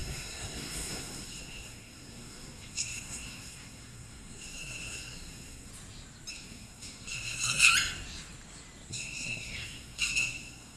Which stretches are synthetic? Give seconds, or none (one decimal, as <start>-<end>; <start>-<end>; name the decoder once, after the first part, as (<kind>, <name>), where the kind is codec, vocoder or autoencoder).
0.0-5.7 (codec, SNAC); 6.3-7.7; 8.9-10.8